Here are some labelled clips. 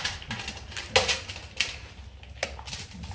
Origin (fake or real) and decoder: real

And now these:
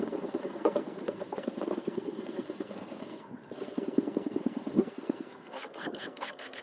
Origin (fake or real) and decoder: fake, codec, SNAC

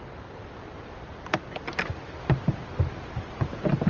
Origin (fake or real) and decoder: real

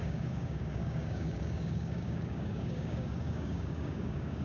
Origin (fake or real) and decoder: fake, codec, DAC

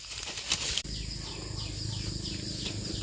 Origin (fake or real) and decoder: real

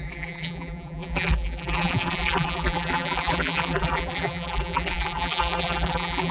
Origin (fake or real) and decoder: fake, vocoder, BigVGAN v2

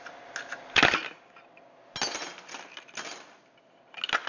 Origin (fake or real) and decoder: real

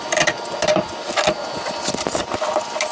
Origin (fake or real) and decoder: real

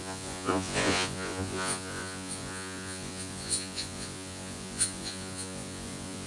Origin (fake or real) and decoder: fake, vocoder, Vocos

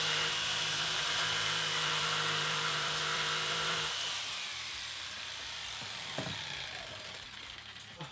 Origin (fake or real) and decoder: fake, vocoder, BigVGAN v2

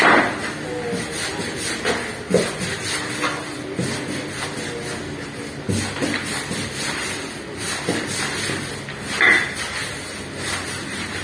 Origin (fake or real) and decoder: real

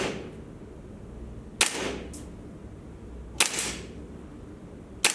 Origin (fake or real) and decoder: real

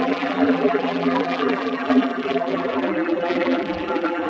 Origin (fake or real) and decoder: fake, vocoder, BigVGAN v2